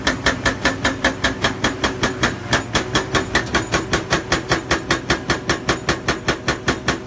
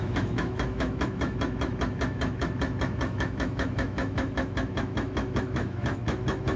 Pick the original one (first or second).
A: first